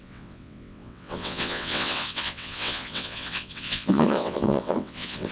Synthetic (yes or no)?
yes